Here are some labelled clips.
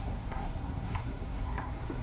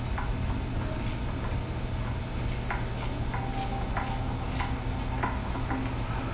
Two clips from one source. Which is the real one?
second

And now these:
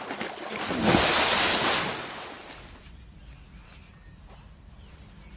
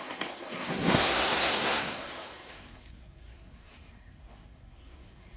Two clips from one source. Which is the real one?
first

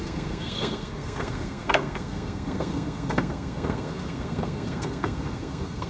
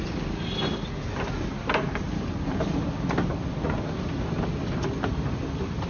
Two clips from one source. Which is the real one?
second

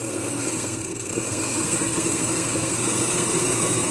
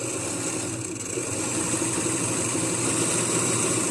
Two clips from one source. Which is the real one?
second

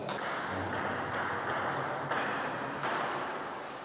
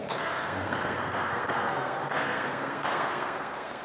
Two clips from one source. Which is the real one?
first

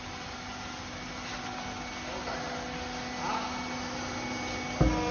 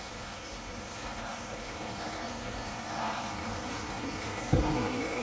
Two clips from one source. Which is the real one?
first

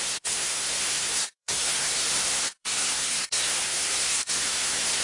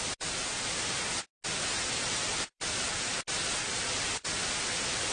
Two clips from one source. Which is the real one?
second